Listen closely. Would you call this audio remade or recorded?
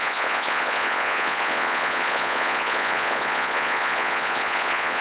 remade